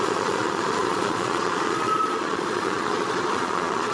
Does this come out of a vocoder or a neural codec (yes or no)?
yes